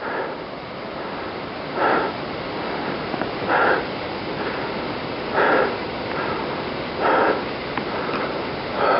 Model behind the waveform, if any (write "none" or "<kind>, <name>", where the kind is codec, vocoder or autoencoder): none